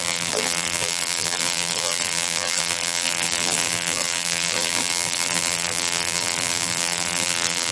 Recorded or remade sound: remade